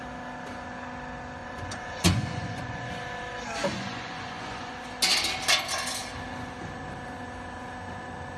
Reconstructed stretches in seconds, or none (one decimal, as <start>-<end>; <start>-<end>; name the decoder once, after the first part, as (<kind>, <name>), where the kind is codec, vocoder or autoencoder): 1.4-2.9 (vocoder, Vocos); 3.7-4.9